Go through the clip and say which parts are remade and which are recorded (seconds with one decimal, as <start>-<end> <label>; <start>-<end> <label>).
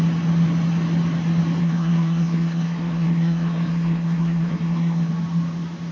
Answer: 0.0-1.6 recorded; 1.6-5.1 remade; 5.1-5.9 recorded